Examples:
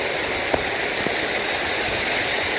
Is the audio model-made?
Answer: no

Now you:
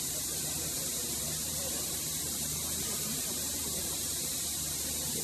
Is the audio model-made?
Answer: yes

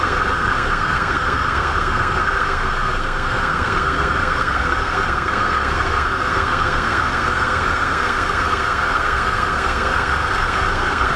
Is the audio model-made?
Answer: yes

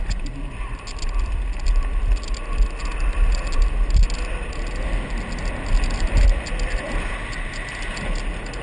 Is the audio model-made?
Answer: no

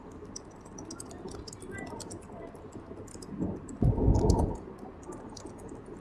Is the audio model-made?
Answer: no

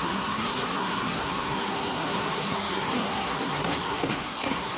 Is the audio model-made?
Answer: yes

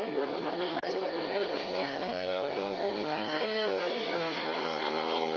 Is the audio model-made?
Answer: yes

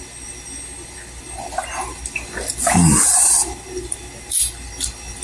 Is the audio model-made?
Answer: no